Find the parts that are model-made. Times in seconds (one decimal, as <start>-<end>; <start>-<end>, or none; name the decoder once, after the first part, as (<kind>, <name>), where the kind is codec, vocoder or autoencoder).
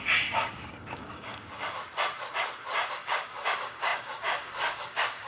0.0-1.8 (codec, DAC); 2.9-5.3